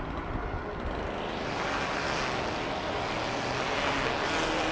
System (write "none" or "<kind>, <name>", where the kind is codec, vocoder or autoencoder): none